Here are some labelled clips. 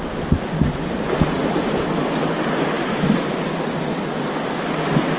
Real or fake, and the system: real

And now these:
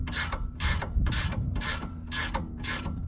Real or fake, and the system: fake, vocoder, BigVGAN v2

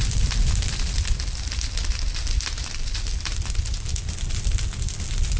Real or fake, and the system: real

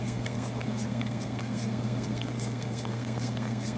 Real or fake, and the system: fake, codec, SNAC